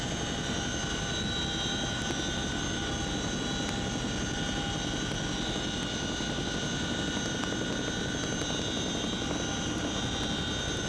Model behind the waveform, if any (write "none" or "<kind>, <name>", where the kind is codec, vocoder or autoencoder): none